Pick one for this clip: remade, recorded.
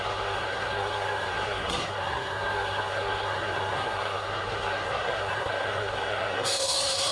remade